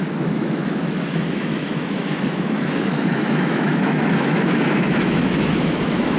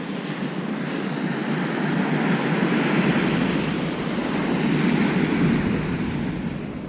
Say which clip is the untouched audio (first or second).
second